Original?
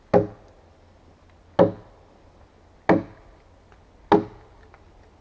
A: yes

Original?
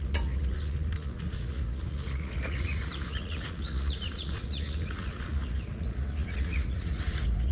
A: no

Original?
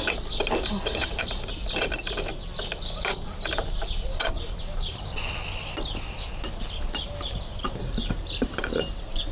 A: yes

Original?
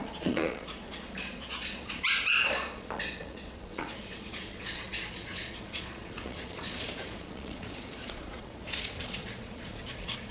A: no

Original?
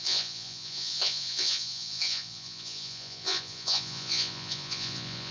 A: no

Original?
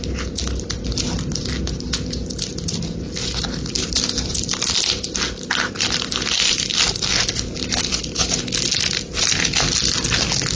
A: yes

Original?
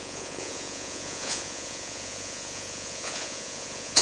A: no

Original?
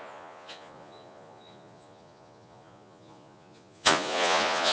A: no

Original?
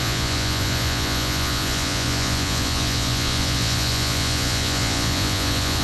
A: no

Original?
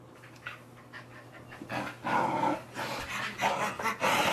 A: yes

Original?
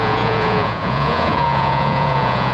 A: no